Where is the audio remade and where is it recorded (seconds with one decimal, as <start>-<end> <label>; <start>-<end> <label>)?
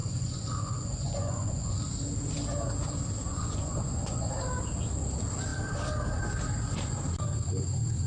0.0-1.9 remade; 1.9-3.3 recorded; 3.3-4.3 remade; 4.3-8.1 recorded